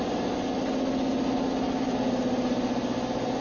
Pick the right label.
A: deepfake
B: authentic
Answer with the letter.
B